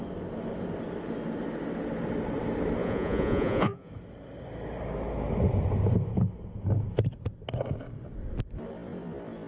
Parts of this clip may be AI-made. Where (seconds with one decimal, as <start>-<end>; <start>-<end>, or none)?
2.8-3.9